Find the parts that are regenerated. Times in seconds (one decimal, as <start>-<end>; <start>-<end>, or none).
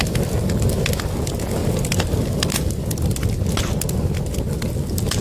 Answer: none